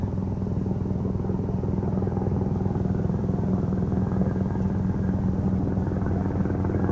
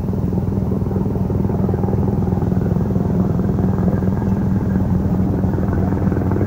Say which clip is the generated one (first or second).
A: second